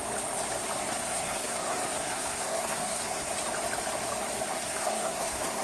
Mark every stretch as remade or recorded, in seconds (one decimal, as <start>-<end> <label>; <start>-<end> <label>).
0.0-0.9 recorded; 0.9-3.3 remade; 3.3-4.5 recorded; 4.5-5.6 remade